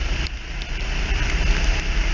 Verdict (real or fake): fake